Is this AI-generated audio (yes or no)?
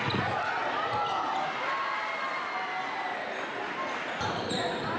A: no